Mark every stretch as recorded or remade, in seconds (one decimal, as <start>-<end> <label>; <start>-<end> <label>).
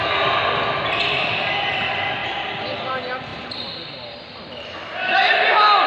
0.0-2.2 recorded; 2.2-2.9 remade; 2.9-3.3 recorded; 3.3-5.9 remade